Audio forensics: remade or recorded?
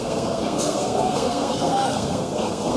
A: remade